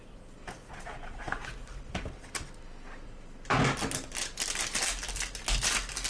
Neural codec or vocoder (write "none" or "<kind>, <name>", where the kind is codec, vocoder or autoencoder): none